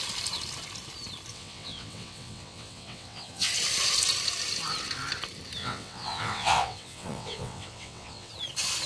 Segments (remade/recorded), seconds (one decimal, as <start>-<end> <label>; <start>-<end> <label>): 0.0-1.3 recorded; 1.3-3.5 remade; 3.5-5.6 recorded; 5.6-8.3 remade; 8.3-8.9 recorded